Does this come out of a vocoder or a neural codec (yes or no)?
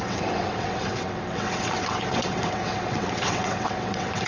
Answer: yes